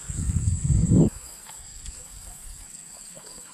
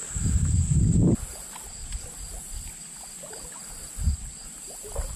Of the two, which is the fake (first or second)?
first